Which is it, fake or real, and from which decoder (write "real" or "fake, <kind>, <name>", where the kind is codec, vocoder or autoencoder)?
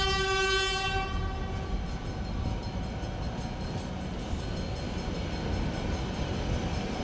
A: real